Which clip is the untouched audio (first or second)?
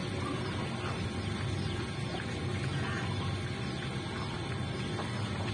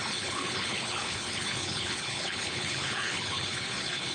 first